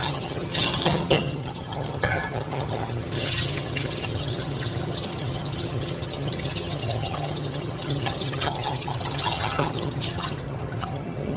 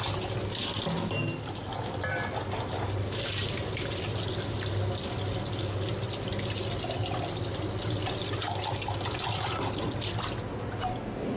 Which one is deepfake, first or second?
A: first